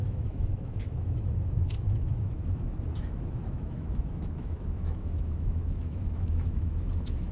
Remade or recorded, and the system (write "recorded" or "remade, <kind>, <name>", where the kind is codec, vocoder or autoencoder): remade, autoencoder, DAC-VAE